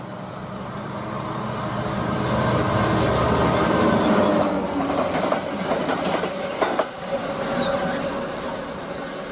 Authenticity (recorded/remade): recorded